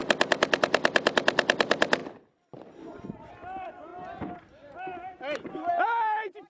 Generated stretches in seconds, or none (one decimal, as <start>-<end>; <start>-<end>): 0.6-2.0; 2.7-3.9; 4.4-4.9; 5.7-6.5